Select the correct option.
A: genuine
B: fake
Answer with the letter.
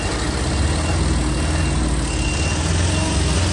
A